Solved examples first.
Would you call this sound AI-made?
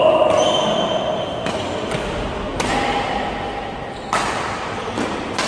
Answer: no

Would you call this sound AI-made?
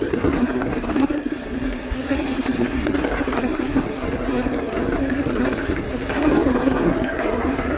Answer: yes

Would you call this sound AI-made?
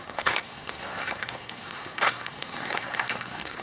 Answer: yes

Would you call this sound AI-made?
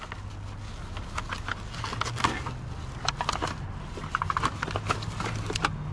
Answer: no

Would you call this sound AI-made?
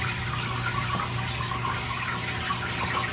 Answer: no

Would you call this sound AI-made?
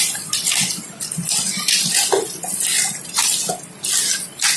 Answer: no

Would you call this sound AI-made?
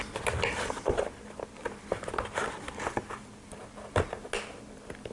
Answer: no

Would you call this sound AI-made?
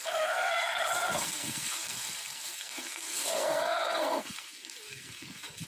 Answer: yes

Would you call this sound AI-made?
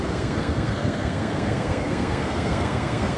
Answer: yes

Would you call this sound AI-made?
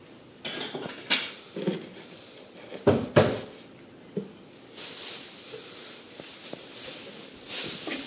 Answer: no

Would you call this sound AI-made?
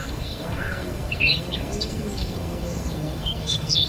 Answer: yes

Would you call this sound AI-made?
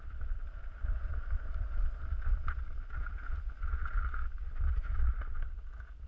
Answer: no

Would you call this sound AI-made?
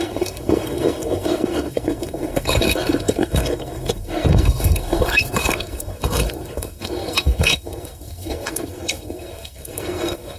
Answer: yes